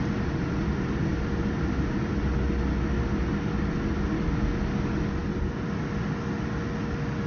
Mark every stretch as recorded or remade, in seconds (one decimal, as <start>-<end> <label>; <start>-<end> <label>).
0.0-7.3 recorded